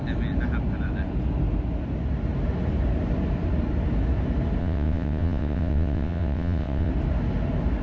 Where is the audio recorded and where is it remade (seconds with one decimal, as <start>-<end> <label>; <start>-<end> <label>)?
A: 0.0-4.6 recorded; 4.6-6.9 remade; 6.9-7.8 recorded